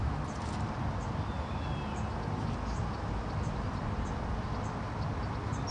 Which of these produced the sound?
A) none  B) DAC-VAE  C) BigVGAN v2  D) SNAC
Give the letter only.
A